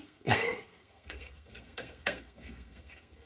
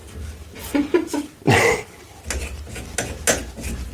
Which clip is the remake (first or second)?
first